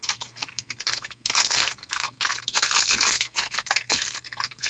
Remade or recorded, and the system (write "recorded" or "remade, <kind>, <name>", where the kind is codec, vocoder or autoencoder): remade, codec, SNAC